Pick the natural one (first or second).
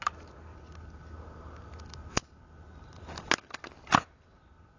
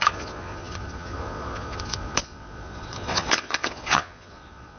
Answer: first